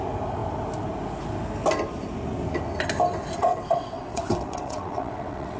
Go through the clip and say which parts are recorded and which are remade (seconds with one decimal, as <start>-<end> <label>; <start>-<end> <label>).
0.0-3.4 recorded; 3.4-5.6 remade